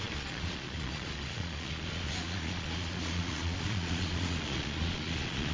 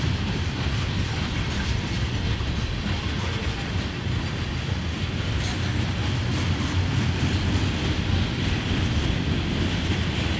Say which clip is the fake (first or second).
first